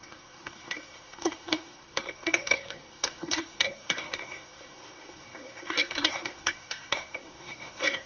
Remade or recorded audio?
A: remade